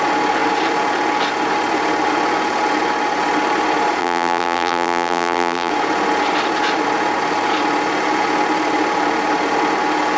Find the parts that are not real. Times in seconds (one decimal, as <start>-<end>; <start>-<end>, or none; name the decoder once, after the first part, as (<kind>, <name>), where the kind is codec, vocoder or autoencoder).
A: 4.0-5.7 (vocoder, BigVGAN v2)